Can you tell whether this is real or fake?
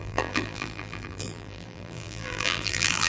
fake